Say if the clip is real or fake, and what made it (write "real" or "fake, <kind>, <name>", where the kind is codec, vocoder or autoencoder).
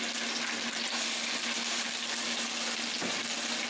real